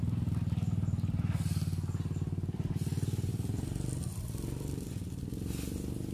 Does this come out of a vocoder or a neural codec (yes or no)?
yes